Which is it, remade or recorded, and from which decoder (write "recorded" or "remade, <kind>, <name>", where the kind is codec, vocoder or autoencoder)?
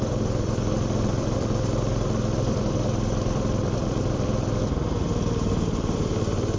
remade, vocoder, BigVGAN v2